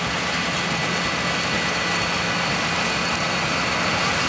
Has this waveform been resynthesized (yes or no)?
no